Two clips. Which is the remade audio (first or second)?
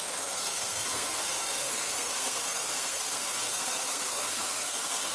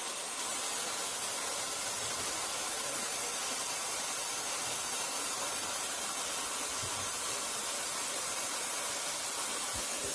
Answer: first